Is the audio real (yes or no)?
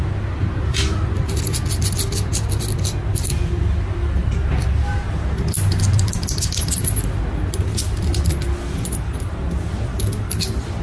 yes